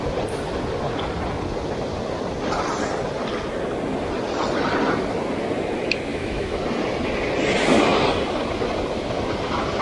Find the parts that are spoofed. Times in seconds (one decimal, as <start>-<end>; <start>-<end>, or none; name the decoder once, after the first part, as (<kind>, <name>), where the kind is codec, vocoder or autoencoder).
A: 6.1-6.6 (autoencoder, DAC-VAE)